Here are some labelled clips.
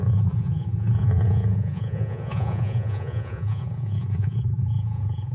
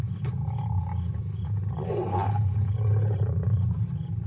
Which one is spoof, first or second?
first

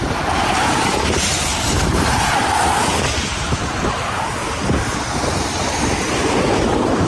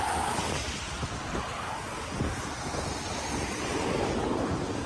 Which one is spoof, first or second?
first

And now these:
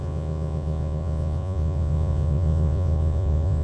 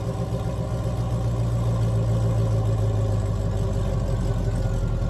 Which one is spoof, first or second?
first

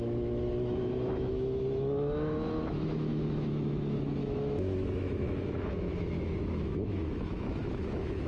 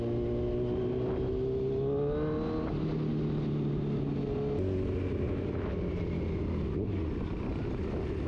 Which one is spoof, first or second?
first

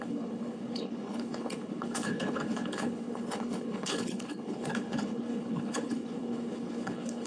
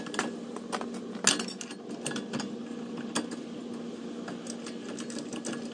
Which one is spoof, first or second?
first